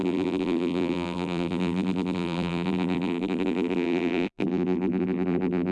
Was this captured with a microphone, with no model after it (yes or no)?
no